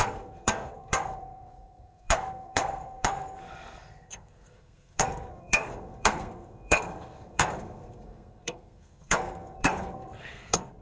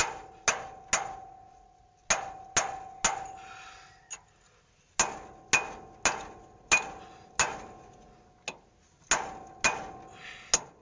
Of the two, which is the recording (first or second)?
second